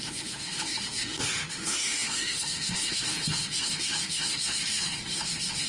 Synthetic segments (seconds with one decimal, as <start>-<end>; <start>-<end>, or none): 0.0-5.7